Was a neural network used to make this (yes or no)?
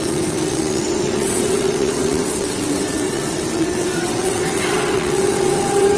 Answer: yes